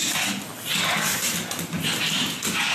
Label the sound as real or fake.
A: real